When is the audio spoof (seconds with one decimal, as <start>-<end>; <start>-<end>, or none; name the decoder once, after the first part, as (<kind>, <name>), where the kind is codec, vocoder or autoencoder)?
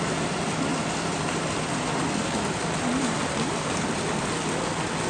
0.7-2.2 (vocoder, BigVGAN v2); 2.9-4.3